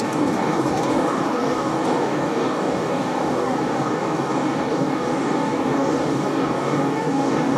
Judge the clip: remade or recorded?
remade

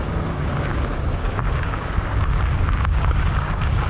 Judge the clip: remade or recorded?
remade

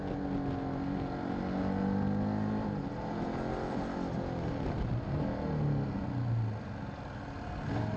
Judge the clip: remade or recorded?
recorded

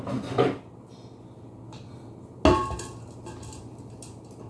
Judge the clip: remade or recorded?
recorded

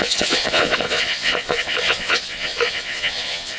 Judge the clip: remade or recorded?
remade